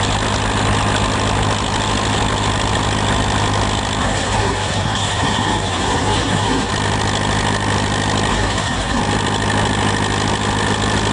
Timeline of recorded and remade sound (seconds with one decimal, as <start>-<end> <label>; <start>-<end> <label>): 0.0-4.0 recorded; 4.0-6.7 remade; 6.7-8.3 recorded; 8.3-9.0 remade; 9.0-11.1 recorded